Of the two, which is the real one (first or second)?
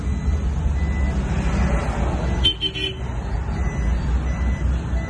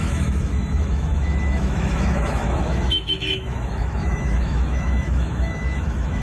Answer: first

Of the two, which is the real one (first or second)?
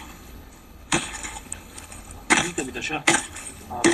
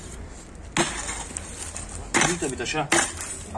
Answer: second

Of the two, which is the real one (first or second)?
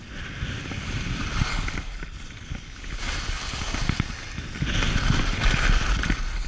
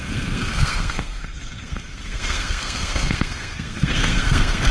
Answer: first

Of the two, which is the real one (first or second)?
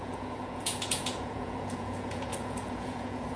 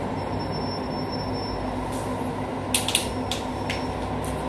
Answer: second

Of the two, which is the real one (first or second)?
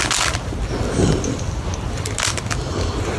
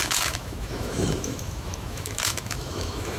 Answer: first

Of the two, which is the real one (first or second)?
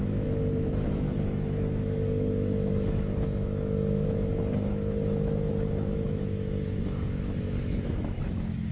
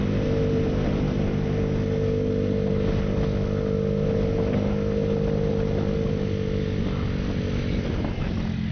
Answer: second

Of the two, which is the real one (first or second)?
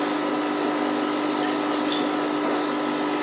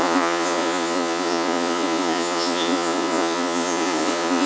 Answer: first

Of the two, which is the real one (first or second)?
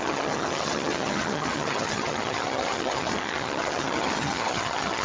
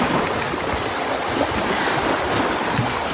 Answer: second